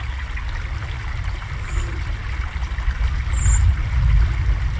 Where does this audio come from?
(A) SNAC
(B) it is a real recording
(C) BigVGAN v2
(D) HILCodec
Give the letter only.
B